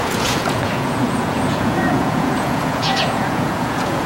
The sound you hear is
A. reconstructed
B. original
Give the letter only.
A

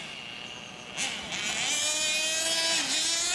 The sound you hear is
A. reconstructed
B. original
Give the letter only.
B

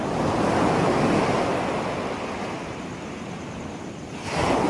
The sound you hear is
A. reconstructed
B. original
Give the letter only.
B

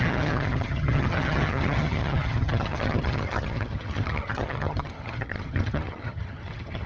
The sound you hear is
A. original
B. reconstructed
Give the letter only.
B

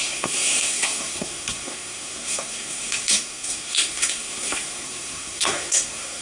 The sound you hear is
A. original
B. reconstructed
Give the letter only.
B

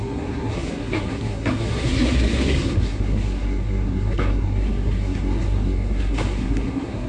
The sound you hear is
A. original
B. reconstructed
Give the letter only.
B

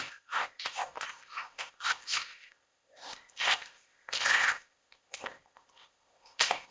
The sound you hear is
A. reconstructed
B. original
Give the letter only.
A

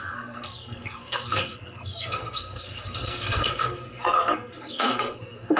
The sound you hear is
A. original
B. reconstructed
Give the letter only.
B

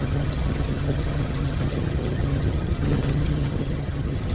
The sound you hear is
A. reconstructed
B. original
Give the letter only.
A